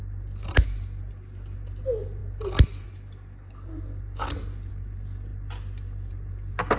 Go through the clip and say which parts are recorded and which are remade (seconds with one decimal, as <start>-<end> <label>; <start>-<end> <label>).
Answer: 0.0-6.8 recorded